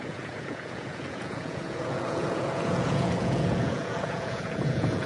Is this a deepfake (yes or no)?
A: yes